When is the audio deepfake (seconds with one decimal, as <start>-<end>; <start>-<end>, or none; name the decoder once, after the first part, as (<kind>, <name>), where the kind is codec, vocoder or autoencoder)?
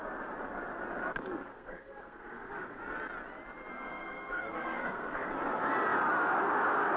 1.5-2.8 (codec, SNAC); 3.7-5.3